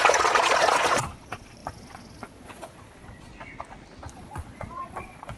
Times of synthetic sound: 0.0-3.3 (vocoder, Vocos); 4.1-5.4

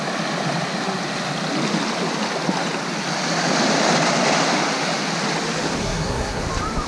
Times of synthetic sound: 5.8-6.4 (codec, SNAC)